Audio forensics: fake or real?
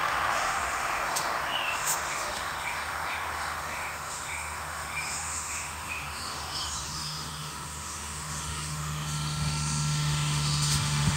fake